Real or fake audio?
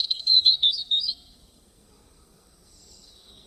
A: fake